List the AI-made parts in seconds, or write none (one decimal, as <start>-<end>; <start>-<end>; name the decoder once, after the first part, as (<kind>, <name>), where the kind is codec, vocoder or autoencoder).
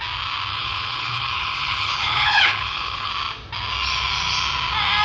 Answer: 0.5-3.1 (codec, HILCodec)